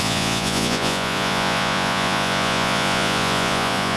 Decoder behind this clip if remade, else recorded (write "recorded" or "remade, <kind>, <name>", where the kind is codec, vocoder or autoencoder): remade, vocoder, Vocos